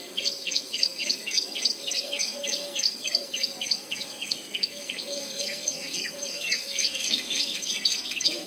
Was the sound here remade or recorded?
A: remade